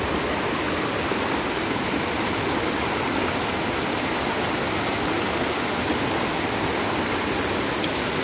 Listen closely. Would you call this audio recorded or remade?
recorded